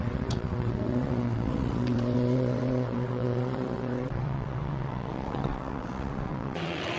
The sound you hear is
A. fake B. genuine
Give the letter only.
A